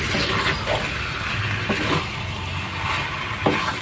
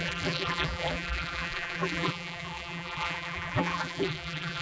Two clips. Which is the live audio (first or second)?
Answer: first